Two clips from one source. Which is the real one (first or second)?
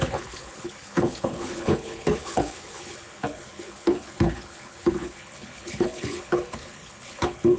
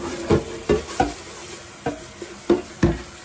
second